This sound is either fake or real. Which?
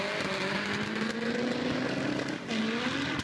real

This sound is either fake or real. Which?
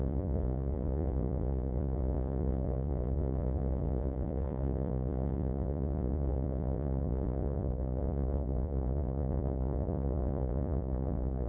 fake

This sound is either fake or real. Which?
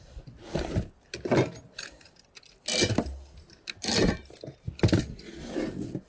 real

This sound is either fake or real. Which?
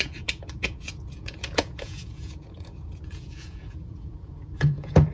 fake